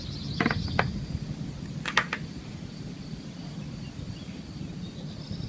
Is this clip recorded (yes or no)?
yes